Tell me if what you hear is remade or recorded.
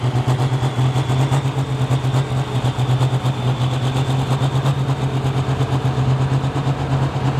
recorded